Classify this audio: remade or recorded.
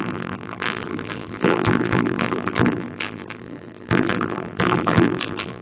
remade